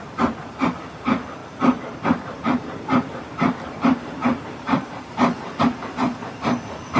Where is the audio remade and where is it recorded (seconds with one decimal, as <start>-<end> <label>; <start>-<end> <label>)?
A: 0.0-1.4 recorded; 1.4-5.6 remade; 5.6-7.0 recorded